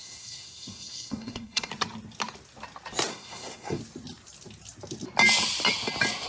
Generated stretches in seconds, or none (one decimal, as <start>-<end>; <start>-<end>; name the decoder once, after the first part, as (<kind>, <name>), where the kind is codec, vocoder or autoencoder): 0.0-1.7 (codec, SNAC); 3.1-3.8